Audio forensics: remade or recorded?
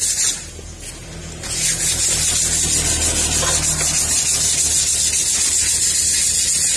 recorded